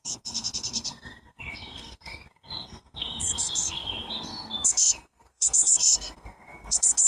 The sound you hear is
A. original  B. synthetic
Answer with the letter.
B